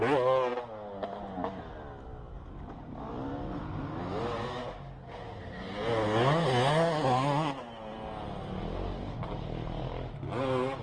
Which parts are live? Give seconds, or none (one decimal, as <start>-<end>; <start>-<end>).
0.0-10.8